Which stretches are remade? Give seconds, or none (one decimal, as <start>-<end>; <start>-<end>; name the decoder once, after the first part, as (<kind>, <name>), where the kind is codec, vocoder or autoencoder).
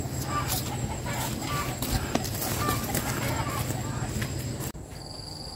2.9-5.6 (vocoder, BigVGAN v2)